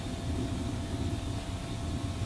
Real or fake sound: real